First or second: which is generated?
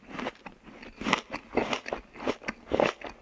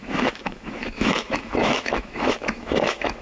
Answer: second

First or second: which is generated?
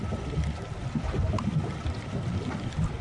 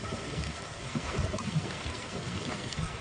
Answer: second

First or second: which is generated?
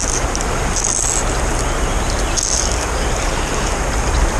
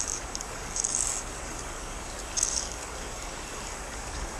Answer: second